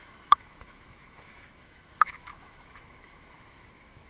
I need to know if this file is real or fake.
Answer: fake